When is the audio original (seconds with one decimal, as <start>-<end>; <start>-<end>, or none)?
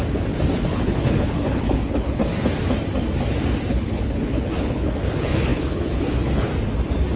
0.0-0.7; 2.2-3.7; 6.5-7.2